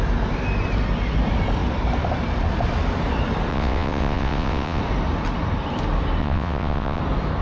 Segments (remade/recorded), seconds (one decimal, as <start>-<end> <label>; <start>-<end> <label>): 0.0-3.5 recorded; 3.5-4.8 remade; 4.8-6.2 recorded; 6.2-7.0 remade; 7.0-7.4 recorded